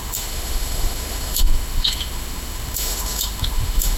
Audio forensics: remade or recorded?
remade